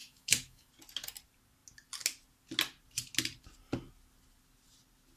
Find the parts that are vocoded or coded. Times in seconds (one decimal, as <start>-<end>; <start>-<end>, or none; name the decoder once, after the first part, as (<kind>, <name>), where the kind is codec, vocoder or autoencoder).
0.0-0.7 (autoencoder, DAC-VAE)